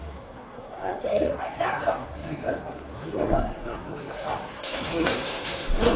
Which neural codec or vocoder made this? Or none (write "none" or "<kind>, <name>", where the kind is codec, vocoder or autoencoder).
codec, SNAC